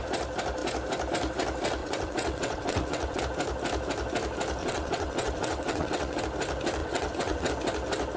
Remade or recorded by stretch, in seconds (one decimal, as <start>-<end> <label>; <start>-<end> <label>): 0.0-1.8 recorded; 1.8-3.2 remade; 3.2-4.6 recorded; 4.6-6.2 remade; 6.2-6.8 recorded; 6.8-7.5 remade; 7.5-8.2 recorded